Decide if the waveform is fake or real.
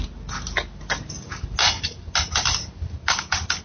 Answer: real